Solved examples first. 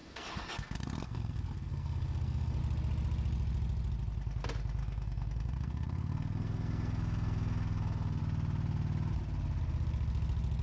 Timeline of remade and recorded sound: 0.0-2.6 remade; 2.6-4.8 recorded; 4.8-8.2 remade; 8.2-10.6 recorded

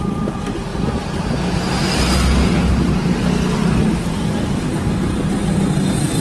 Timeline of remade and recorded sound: 0.0-6.2 recorded

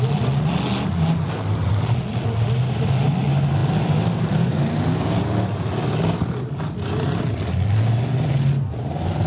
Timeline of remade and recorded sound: 0.0-9.3 recorded

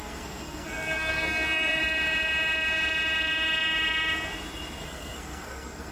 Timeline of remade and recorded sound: 0.0-1.8 remade; 1.8-4.8 recorded; 4.8-5.9 remade